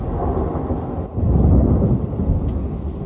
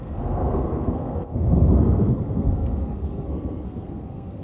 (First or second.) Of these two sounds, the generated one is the second